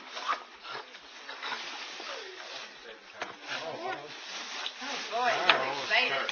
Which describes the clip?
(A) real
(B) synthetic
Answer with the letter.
A